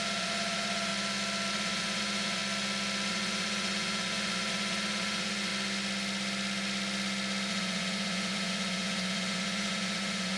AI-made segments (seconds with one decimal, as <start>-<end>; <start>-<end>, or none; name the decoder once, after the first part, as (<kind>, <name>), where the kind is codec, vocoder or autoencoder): 0.0-0.9 (vocoder, Vocos); 1.5-2.4; 3.1-5.5; 7.5-10.4